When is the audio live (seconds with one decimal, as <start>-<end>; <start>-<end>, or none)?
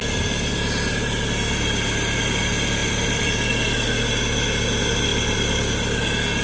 0.0-2.8; 3.3-5.1; 5.6-6.4